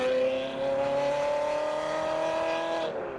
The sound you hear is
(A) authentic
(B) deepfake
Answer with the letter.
A